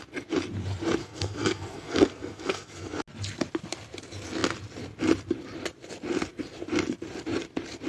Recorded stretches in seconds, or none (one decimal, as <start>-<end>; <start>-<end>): 0.0-1.0; 3.0-7.9